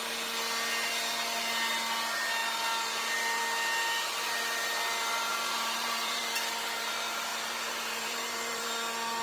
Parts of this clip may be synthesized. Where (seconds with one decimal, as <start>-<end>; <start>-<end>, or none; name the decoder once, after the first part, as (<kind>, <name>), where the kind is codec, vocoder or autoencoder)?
5.3-6.2 (vocoder, BigVGAN v2); 7.3-8.7